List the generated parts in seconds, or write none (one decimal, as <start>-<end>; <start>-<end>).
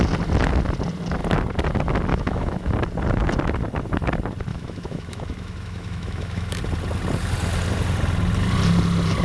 2.1-2.7; 4.5-6.6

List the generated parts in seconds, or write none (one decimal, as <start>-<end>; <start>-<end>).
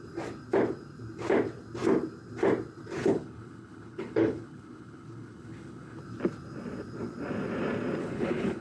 3.0-6.0; 8.0-8.6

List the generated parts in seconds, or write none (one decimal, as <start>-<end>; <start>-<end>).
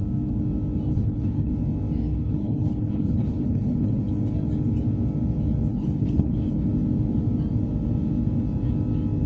0.9-1.5; 2.1-4.0; 5.7-6.7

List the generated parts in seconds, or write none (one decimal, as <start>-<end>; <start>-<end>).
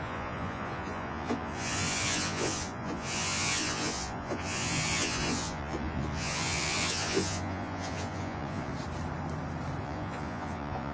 0.0-8.7; 9.8-10.9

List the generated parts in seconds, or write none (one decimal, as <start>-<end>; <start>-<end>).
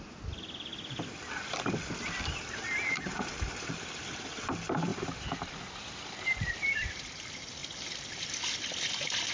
0.0-4.9; 6.5-9.3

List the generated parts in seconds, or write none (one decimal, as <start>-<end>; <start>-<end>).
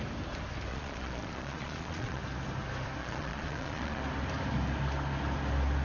0.7-2.2; 3.0-4.0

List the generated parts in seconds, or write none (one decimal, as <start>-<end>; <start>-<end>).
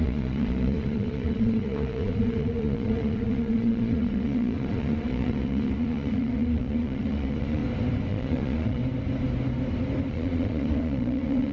0.0-7.6; 8.1-8.8; 10.1-11.5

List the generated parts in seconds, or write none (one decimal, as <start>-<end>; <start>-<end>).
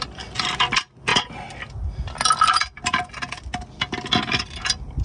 none